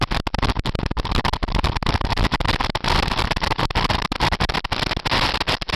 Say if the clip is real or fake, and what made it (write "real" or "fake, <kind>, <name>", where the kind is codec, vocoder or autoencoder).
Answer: real